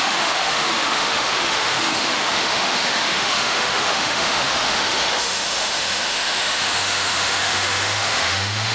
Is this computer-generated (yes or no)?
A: yes